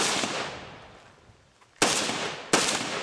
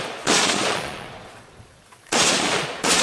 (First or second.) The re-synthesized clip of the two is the second